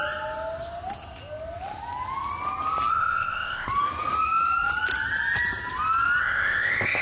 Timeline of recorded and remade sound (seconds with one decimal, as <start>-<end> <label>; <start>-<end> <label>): 0.0-2.9 recorded; 2.9-3.7 remade; 3.7-6.2 recorded; 6.2-7.0 remade